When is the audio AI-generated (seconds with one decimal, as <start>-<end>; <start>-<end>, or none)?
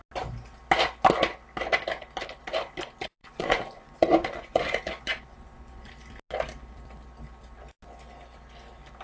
3.2-5.9